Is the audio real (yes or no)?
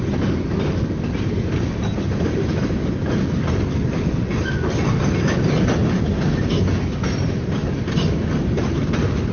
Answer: yes